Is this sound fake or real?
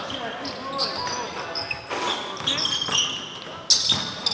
real